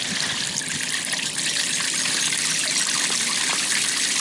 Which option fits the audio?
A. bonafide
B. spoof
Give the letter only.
A